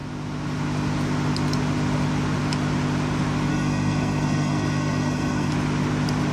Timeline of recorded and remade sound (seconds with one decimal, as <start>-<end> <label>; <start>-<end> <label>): 0.0-3.5 recorded; 3.5-5.5 remade; 5.5-6.3 recorded